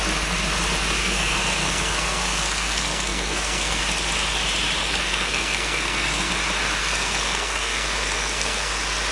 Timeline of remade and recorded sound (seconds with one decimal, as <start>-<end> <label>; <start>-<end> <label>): 0.0-1.0 recorded; 1.0-3.8 remade; 3.8-4.8 recorded; 4.8-6.3 remade; 6.3-6.8 recorded; 6.8-8.7 remade; 8.7-9.1 recorded